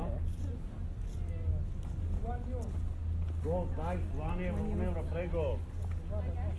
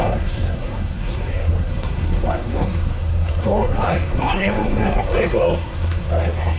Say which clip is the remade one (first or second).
second